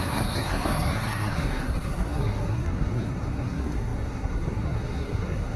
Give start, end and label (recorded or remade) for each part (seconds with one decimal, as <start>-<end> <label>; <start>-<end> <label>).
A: 0.0-5.6 remade